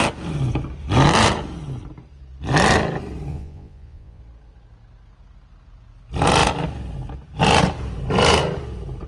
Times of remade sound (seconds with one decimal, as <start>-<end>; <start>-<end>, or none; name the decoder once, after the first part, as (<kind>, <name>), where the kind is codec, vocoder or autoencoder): 3.3-4.2 (vocoder, Vocos)